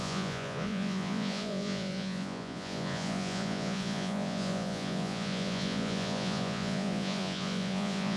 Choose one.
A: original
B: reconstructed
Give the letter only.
B